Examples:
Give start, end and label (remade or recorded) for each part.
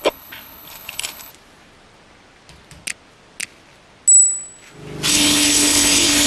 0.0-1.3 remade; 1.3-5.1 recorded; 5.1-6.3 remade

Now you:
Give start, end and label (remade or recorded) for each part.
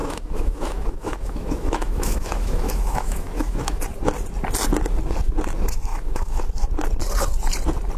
0.0-3.8 remade; 3.8-5.9 recorded; 5.9-6.4 remade; 6.4-8.0 recorded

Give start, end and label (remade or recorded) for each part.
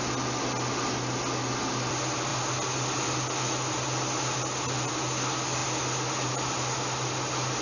0.0-7.6 recorded